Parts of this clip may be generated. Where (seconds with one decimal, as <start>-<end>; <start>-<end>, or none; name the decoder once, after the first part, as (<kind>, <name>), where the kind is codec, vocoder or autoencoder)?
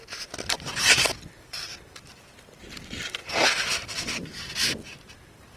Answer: none